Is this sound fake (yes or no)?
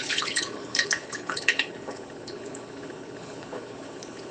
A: yes